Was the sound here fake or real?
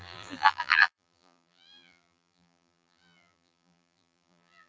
fake